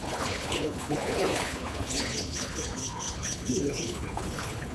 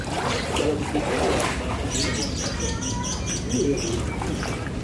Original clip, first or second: second